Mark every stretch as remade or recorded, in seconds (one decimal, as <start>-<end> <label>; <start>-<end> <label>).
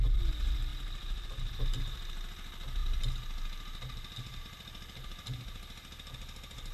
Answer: 0.0-0.7 recorded; 0.7-1.6 remade; 1.6-6.7 recorded